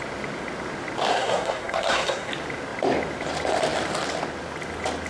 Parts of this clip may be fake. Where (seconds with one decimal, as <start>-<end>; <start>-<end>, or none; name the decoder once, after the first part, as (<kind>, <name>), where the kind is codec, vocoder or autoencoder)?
1.1-2.3 (codec, SNAC)